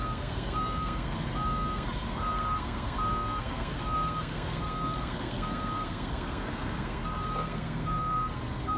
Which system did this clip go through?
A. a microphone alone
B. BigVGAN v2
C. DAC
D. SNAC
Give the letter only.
D